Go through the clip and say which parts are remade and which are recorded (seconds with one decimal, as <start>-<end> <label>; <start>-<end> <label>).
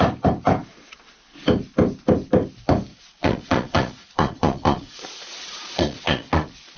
0.0-2.9 recorded; 2.9-6.8 remade